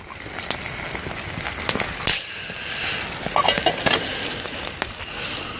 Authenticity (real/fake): real